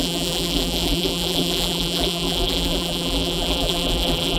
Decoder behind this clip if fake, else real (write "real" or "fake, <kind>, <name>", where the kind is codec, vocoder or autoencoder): fake, vocoder, BigVGAN v2